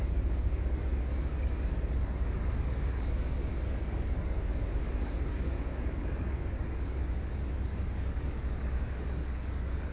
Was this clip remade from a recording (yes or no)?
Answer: yes